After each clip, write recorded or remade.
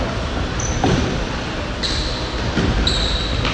remade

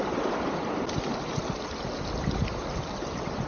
remade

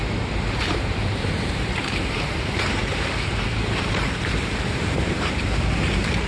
remade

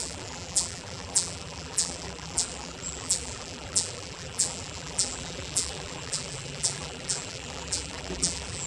remade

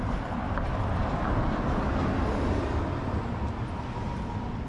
recorded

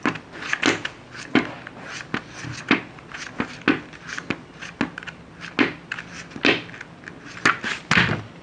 recorded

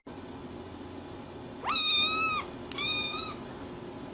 recorded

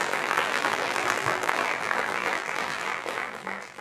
remade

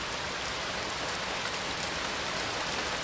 recorded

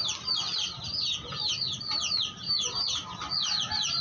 recorded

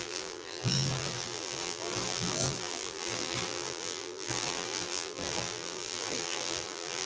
remade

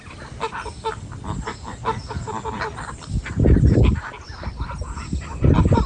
remade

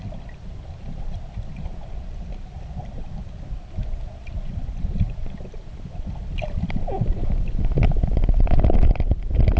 remade